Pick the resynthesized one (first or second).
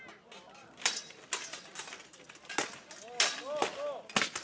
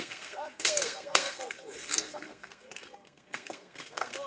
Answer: second